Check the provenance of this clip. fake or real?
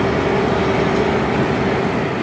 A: real